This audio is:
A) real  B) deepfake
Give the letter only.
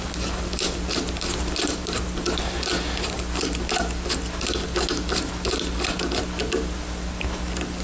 A